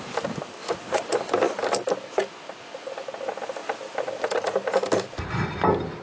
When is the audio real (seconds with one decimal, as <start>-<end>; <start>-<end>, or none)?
0.0-6.0